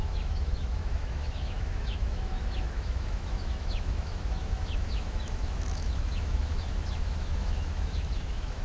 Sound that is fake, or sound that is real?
fake